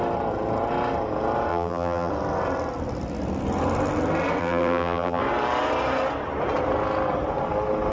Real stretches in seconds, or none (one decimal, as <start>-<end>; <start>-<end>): 0.0-1.5; 2.1-4.4; 5.2-7.9